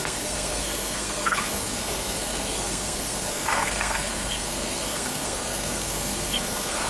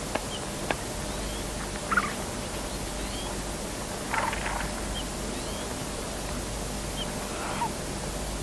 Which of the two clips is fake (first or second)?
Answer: first